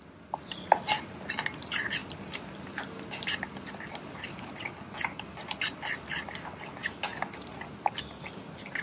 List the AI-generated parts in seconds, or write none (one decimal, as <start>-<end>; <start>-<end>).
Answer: none